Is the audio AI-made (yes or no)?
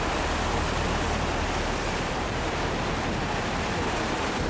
yes